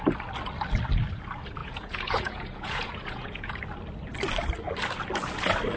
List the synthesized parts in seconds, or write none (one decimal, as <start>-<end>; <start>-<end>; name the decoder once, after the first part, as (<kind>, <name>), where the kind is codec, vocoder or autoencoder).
1.6-3.6 (vocoder, Vocos)